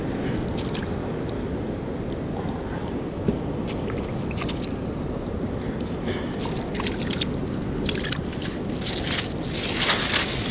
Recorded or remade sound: recorded